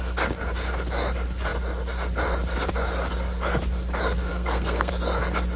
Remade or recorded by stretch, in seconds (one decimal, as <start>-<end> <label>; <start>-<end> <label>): 0.0-4.3 recorded; 4.3-4.9 remade; 4.9-5.6 recorded